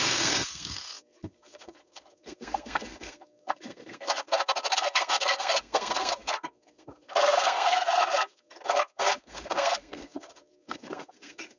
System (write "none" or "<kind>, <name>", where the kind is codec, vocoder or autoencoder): codec, SNAC